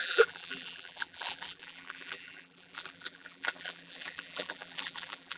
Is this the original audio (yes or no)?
no